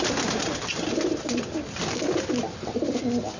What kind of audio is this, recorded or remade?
recorded